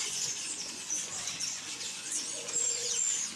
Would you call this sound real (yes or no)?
no